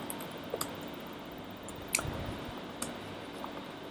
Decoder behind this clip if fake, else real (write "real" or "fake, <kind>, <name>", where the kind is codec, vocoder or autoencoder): real